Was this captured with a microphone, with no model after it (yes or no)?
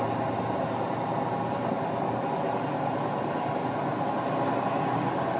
yes